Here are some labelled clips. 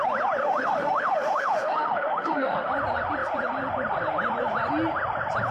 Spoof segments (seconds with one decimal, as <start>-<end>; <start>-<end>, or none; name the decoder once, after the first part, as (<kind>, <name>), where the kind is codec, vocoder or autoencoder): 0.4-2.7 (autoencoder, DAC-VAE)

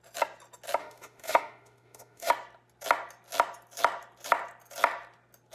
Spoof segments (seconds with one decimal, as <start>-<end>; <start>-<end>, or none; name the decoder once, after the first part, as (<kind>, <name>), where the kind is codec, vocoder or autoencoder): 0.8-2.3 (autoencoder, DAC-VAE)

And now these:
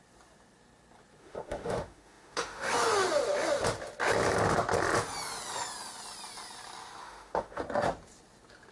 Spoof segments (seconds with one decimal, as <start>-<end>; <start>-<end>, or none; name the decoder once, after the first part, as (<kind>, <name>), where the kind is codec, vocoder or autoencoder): 1.2-2.7 (autoencoder, DAC-VAE); 7.0-7.6

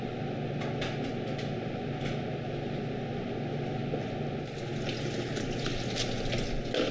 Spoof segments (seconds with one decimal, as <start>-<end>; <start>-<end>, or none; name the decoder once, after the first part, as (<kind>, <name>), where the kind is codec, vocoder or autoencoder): none

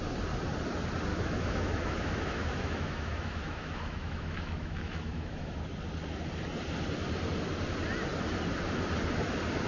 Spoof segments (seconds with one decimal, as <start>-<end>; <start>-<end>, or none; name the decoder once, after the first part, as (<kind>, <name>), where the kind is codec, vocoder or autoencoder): 1.1-5.6 (autoencoder, DAC-VAE)

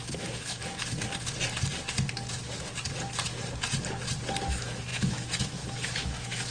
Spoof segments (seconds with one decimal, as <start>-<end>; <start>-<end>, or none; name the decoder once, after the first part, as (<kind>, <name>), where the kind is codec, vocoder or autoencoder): 0.0-0.6 (autoencoder, DAC-VAE); 4.4-6.5